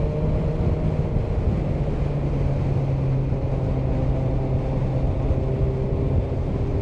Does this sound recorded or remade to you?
recorded